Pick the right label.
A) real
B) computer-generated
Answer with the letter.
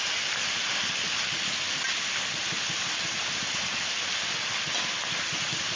A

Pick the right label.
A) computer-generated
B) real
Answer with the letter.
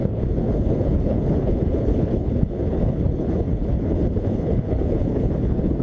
A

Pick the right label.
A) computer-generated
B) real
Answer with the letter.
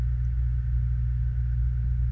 B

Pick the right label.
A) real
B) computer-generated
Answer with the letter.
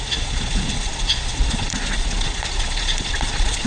B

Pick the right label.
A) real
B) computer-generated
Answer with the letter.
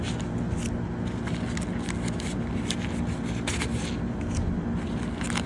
A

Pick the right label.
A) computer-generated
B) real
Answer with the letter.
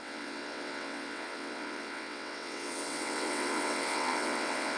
A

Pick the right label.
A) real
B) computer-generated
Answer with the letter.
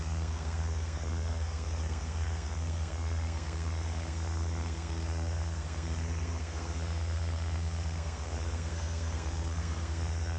B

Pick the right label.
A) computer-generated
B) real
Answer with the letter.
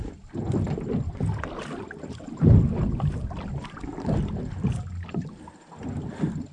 B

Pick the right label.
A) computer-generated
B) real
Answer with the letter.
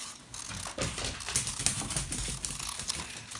B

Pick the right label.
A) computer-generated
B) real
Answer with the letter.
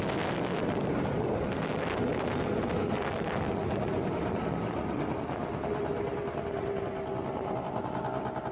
B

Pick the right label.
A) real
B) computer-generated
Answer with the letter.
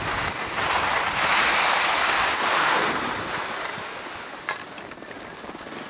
A